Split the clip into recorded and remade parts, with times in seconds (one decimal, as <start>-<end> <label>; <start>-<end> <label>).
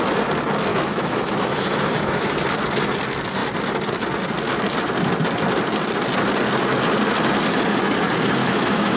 0.0-0.7 recorded; 0.7-2.3 remade; 2.3-8.4 recorded; 8.4-9.0 remade